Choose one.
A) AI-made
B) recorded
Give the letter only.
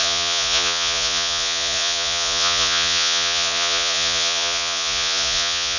A